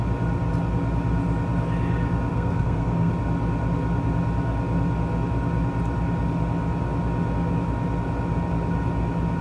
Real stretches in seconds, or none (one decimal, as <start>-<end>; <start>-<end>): 0.0-2.3; 3.1-9.4